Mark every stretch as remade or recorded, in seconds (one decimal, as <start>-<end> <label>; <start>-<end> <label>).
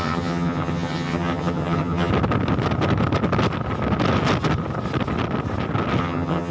0.0-2.1 remade; 2.1-6.0 recorded; 6.0-6.5 remade